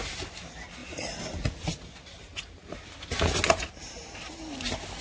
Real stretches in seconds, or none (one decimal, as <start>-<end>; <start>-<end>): 0.0-2.3; 2.8-3.8; 4.3-5.0